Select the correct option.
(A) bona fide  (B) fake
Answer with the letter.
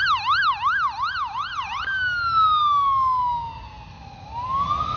A